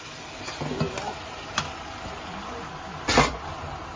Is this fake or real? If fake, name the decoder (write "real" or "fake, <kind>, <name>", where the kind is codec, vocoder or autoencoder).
real